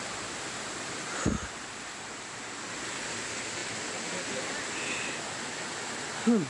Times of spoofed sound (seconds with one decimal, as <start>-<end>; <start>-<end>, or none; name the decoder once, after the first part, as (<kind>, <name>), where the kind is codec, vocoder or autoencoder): none